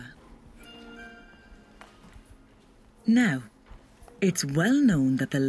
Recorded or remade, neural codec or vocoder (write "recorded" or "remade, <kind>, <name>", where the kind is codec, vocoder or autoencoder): recorded